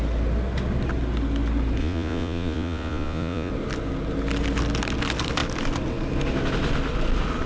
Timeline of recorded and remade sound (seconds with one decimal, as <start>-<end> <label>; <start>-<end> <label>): 0.0-1.8 recorded; 1.8-3.5 remade; 3.5-7.5 recorded